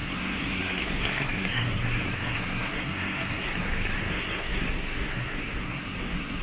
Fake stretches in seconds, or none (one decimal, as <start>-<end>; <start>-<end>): 0.0-6.4